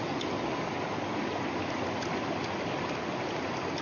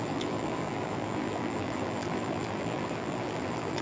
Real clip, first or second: first